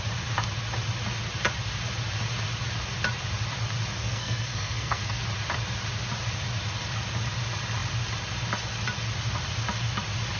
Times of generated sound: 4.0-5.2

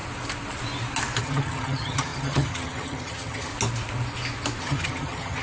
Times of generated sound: 1.2-3.5; 4.6-5.4

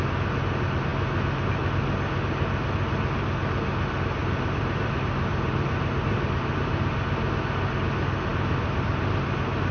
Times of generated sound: 4.2-6.7; 8.3-9.1